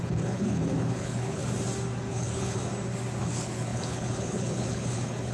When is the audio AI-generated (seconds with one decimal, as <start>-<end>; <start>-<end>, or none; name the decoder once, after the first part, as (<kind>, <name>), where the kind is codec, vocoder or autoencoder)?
0.0-1.4 (codec, HILCodec); 2.1-2.6; 3.2-5.3